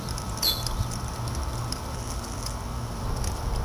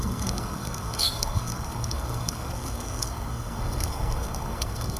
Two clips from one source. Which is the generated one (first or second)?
second